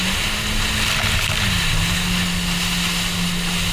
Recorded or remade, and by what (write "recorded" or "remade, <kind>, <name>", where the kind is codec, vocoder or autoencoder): recorded